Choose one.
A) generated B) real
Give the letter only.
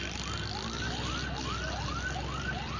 B